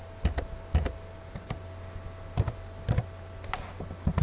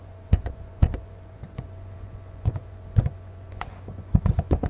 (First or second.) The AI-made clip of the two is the second